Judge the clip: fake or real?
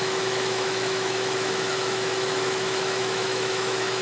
fake